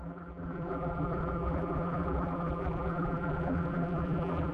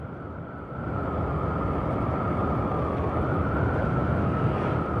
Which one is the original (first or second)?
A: second